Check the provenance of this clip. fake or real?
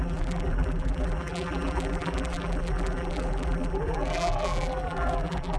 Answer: fake